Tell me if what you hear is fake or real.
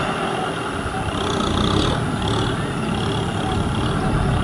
real